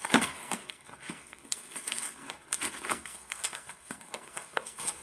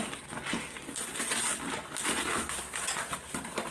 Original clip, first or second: second